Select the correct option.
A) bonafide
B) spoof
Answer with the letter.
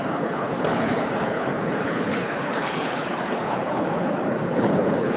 B